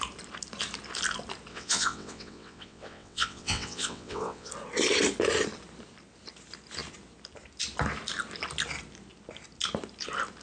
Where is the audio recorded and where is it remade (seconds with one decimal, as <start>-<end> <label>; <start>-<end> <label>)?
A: 0.0-1.5 recorded; 1.5-4.5 remade; 4.5-10.4 recorded